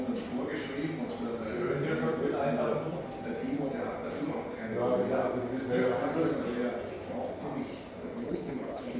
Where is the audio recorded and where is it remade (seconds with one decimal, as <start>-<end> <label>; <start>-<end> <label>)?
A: 0.0-8.2 recorded; 8.2-9.0 remade